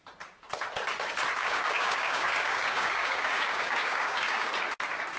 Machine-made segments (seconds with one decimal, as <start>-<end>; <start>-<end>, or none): 1.4-4.5